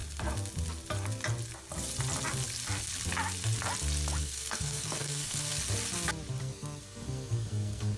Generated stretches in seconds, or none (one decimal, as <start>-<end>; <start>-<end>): 4.2-5.5; 6.4-8.0